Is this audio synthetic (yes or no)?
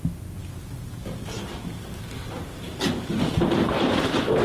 no